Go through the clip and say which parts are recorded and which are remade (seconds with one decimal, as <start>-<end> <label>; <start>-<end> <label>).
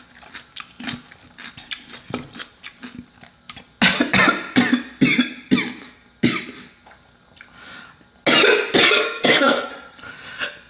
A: 0.0-8.8 recorded; 8.8-9.7 remade; 9.7-10.7 recorded